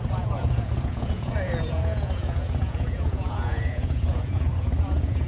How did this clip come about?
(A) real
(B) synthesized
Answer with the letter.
B